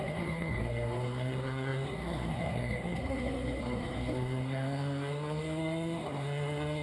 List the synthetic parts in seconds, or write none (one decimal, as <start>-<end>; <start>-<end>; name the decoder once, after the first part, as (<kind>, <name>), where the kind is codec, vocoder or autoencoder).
0.0-6.8 (codec, SNAC)